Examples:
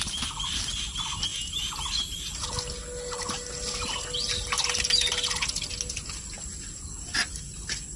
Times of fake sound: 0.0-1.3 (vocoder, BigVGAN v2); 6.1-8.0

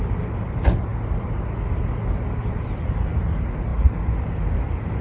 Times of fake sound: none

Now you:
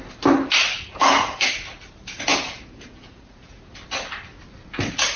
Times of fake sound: 0.9-1.5 (vocoder, Vocos); 2.3-3.7

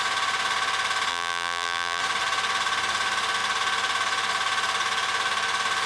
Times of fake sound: 1.1-2.0 (vocoder, BigVGAN v2)